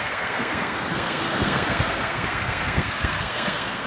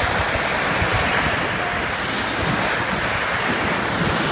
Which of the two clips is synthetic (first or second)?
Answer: first